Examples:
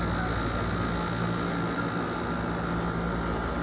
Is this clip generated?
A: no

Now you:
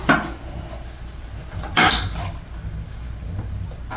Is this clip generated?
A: no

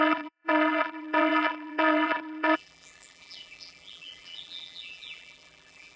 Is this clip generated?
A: yes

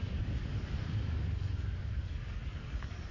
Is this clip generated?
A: yes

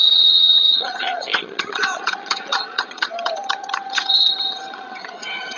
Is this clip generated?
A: yes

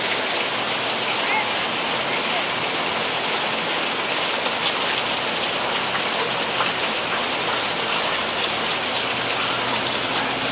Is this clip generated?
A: no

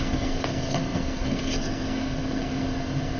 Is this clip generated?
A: yes